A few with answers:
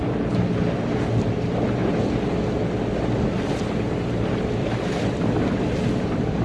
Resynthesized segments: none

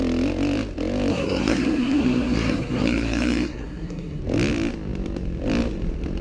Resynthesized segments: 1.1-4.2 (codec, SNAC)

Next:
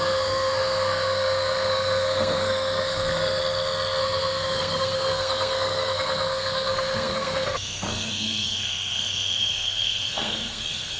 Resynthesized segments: 0.0-3.4 (codec, SNAC); 4.0-11.0

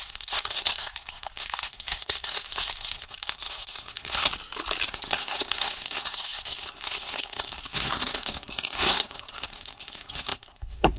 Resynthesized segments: 0.0-4.3 (codec, SNAC); 4.9-11.0

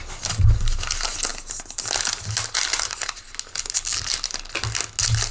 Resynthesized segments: none